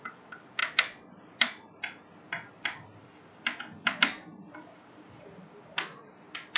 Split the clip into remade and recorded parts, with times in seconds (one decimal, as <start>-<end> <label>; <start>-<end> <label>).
0.0-6.6 recorded